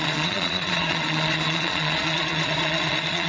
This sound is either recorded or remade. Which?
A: remade